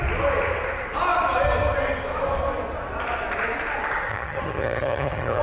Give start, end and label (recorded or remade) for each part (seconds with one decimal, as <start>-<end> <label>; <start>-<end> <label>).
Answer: 0.0-4.1 recorded; 4.1-5.4 remade